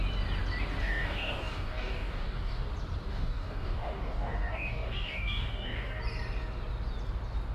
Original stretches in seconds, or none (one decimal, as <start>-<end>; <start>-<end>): 0.0-0.8; 2.7-3.1; 6.0-7.5